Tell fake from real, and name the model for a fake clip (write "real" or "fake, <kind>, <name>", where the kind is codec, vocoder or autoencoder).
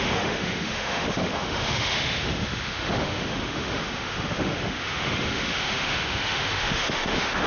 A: fake, autoencoder, DAC-VAE